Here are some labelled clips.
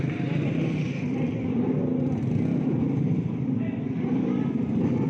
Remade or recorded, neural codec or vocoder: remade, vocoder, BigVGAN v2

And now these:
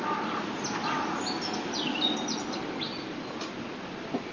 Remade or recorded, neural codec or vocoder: recorded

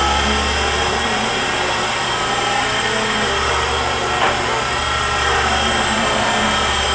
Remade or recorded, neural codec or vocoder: recorded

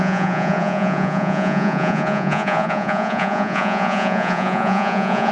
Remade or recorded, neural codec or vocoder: remade, vocoder, Vocos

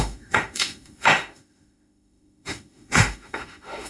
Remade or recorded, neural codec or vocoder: remade, autoencoder, DAC-VAE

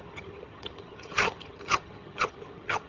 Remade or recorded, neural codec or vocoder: remade, vocoder, HiFi-GAN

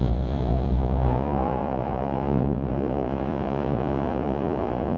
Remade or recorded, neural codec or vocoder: remade, vocoder, Vocos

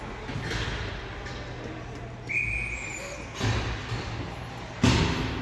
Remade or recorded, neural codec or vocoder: recorded